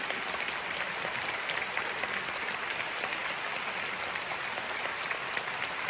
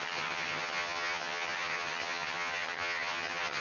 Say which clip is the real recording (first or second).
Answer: first